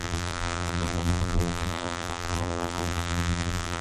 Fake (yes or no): yes